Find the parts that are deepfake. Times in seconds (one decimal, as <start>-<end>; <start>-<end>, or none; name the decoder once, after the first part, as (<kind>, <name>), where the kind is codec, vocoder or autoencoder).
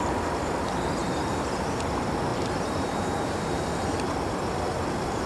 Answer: 0.0-5.3 (vocoder, BigVGAN v2)